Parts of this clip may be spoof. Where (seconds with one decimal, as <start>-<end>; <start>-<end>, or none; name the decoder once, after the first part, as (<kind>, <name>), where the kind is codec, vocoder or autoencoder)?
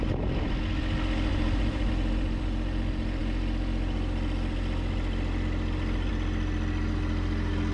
1.3-1.9 (vocoder, BigVGAN v2)